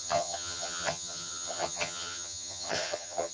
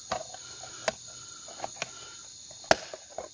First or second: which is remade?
first